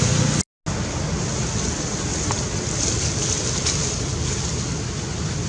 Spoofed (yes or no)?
no